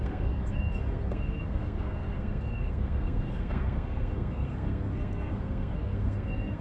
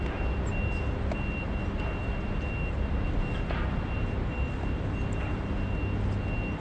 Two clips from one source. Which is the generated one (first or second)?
first